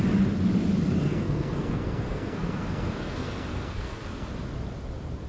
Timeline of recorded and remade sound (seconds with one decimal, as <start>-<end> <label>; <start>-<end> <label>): 0.0-1.1 recorded; 1.1-4.3 remade; 4.3-5.3 recorded